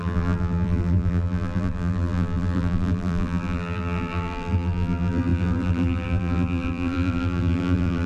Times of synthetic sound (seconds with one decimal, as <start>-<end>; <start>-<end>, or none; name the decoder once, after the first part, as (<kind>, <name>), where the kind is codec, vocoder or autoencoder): 0.0-8.1 (vocoder, BigVGAN v2)